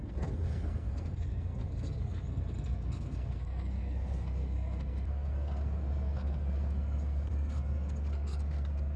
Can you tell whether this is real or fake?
fake